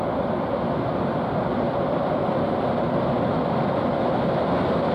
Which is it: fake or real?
fake